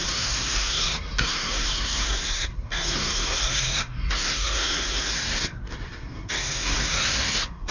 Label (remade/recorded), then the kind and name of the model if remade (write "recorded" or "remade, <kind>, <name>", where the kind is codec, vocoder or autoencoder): remade, codec, SNAC